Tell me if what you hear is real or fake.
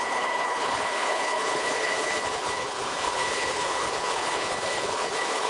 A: fake